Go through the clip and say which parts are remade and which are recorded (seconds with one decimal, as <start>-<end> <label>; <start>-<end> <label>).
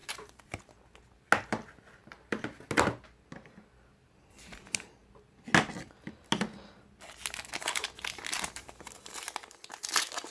0.0-0.6 remade; 0.6-2.0 recorded; 2.0-2.6 remade; 2.6-10.3 recorded